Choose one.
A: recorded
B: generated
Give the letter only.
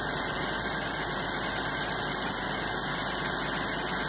A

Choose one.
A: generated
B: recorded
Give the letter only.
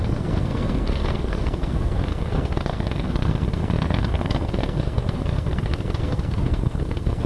A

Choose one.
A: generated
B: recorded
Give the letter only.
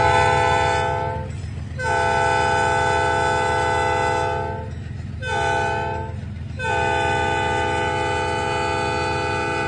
B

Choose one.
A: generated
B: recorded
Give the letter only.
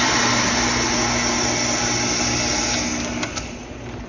B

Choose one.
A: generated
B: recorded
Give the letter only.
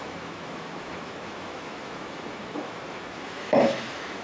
A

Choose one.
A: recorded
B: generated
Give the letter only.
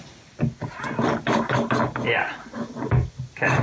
A